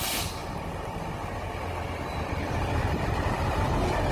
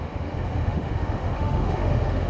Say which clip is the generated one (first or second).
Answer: second